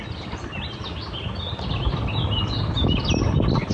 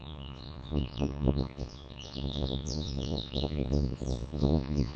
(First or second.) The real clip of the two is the first